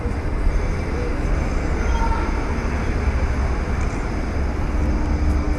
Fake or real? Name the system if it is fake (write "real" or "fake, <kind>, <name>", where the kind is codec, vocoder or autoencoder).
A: real